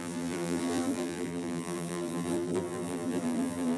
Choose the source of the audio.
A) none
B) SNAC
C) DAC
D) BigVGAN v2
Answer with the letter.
D